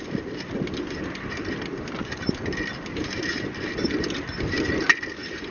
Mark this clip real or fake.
real